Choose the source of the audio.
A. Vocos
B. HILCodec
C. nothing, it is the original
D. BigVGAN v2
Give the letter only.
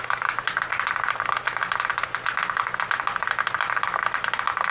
C